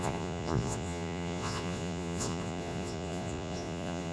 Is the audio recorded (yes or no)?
no